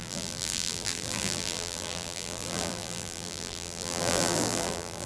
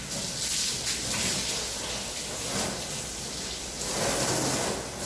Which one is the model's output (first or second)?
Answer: first